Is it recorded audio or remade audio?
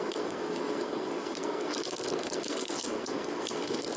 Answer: remade